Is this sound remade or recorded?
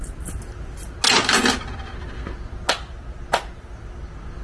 recorded